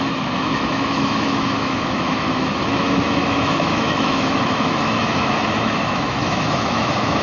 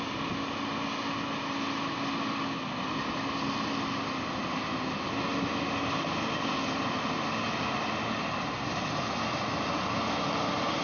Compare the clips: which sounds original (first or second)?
second